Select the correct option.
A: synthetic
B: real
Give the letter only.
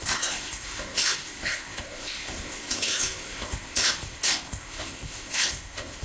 A